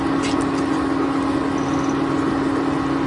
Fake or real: real